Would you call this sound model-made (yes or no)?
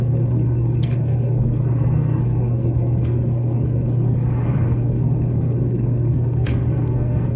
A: yes